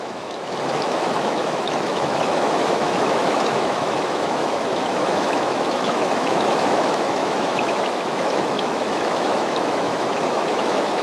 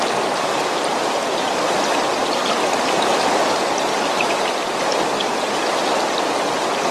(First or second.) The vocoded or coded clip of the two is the first